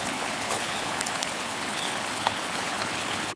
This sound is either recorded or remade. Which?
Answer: remade